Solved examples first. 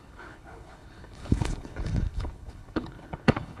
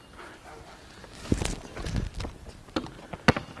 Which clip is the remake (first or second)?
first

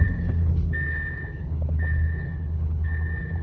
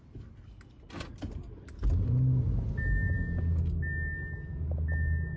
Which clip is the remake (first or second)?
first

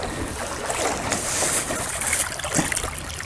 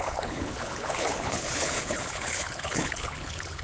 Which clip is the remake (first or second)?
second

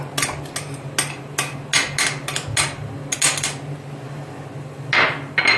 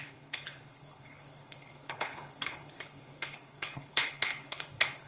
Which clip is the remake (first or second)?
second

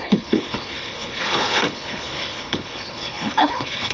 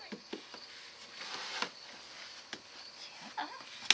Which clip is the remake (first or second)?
first